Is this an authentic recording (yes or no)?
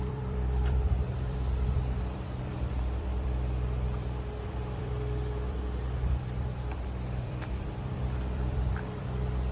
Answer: no